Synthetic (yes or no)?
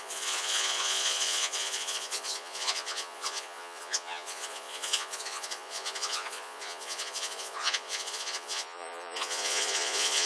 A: yes